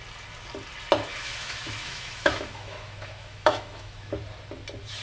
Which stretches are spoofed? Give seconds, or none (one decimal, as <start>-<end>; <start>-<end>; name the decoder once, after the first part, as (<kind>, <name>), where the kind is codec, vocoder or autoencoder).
1.1-4.1 (autoencoder, DAC-VAE)